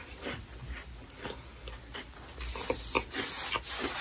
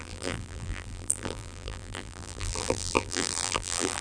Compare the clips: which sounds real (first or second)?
first